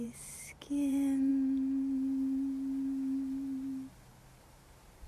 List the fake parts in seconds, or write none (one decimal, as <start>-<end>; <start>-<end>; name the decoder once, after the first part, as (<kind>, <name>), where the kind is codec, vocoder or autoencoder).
0.0-1.3 (vocoder, BigVGAN v2); 4.4-5.1